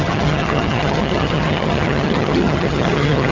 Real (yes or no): no